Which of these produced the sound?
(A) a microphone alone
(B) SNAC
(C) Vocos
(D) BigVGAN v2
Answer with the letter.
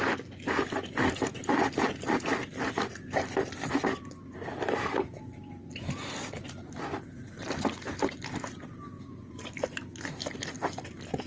D